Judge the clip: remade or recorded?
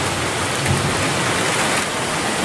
recorded